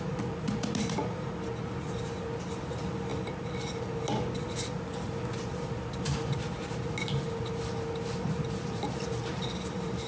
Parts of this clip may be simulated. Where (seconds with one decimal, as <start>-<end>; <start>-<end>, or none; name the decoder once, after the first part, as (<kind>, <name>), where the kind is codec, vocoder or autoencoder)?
none